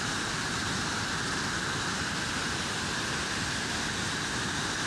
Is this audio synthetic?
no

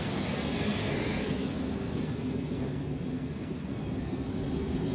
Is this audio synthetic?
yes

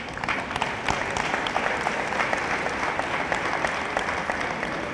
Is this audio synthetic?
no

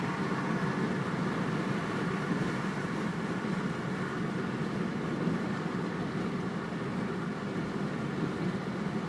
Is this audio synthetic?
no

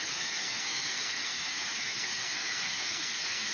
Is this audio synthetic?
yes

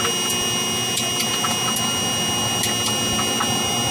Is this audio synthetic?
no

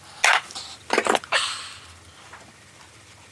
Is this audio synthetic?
no